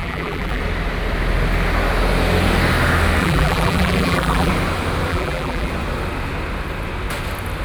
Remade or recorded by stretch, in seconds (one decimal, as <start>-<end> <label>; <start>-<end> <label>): 0.0-0.6 remade; 0.6-3.2 recorded; 3.2-4.5 remade; 4.5-5.1 recorded; 5.1-5.7 remade; 5.7-7.6 recorded

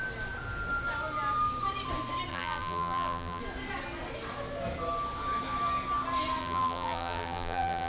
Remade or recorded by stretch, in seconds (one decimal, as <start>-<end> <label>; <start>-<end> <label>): 0.0-2.3 recorded; 2.3-3.4 remade; 3.4-6.4 recorded; 6.4-7.9 remade

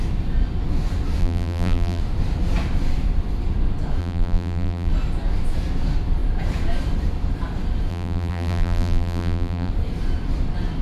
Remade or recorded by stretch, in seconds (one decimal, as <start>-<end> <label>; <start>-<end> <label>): 0.0-1.2 recorded; 1.2-2.0 remade; 2.0-4.0 recorded; 4.0-4.9 remade; 4.9-7.9 recorded; 7.9-9.7 remade; 9.7-10.8 recorded

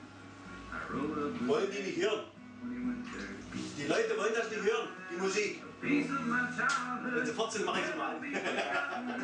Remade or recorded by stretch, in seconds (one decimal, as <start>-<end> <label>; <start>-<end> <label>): 0.0-9.2 recorded

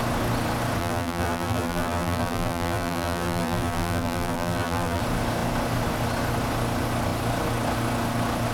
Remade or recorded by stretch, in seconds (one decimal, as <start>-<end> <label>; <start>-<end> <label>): 0.0-0.8 recorded; 0.8-5.0 remade; 5.0-8.5 recorded